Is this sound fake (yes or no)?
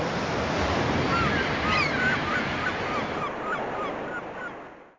no